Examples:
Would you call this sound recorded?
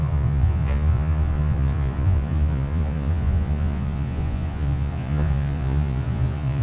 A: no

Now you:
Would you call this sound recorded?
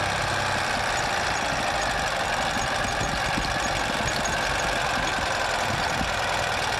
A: yes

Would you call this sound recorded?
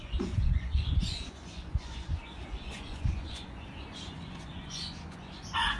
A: no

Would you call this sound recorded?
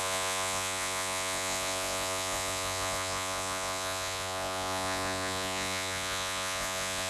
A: no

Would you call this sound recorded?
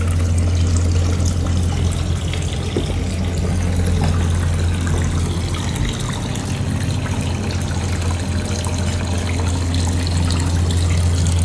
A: yes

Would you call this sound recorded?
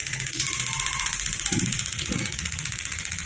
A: no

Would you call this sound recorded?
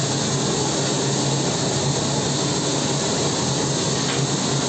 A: yes